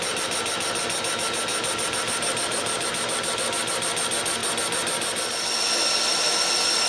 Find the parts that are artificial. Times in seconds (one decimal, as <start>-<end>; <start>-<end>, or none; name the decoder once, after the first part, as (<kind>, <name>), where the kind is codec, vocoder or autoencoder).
1.5-2.9 (vocoder, BigVGAN v2)